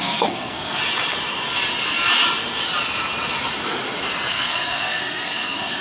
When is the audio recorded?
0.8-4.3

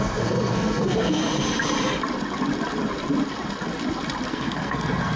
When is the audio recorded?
1.2-4.3

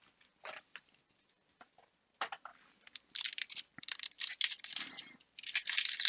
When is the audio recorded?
0.0-6.1

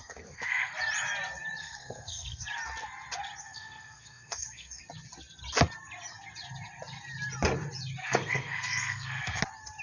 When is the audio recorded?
0.7-1.6; 2.4-3.4; 4.8-8.0; 9.4-9.8

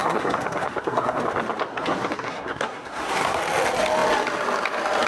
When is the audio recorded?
1.2-1.7; 3.4-5.1